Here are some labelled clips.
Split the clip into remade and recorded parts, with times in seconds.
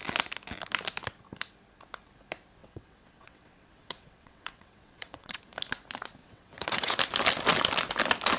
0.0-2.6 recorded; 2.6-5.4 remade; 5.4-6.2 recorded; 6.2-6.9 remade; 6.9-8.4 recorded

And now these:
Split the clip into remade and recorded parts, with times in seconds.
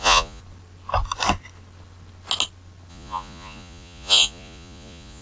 0.0-0.4 remade; 0.4-2.9 recorded; 2.9-5.2 remade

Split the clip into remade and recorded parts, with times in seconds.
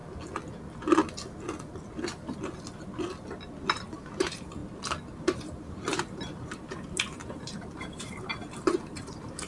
0.0-3.9 recorded; 3.9-4.6 remade; 4.6-5.2 recorded; 5.2-9.5 remade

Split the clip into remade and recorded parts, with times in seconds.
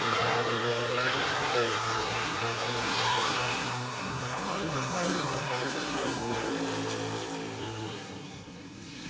0.0-6.5 remade; 6.5-7.6 recorded; 7.6-9.1 remade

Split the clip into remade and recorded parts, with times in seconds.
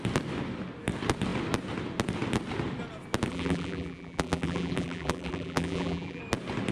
0.0-3.3 recorded; 3.3-6.2 remade; 6.2-6.7 recorded